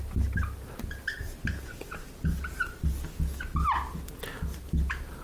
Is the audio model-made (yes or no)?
no